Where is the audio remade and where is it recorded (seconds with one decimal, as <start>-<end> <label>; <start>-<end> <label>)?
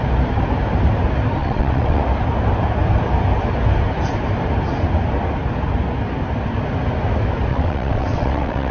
0.0-1.4 recorded; 1.4-2.0 remade; 2.0-7.5 recorded; 7.5-8.7 remade